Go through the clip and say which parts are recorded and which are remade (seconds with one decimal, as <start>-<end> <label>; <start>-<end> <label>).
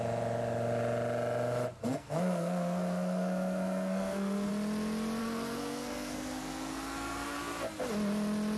0.0-1.8 recorded; 1.8-4.5 remade; 4.5-5.2 recorded; 5.2-7.4 remade; 7.4-8.6 recorded